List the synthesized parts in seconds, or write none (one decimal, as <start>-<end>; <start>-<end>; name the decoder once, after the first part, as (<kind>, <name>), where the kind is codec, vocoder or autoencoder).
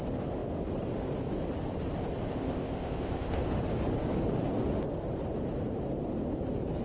2.3-3.4 (codec, ZipCodec)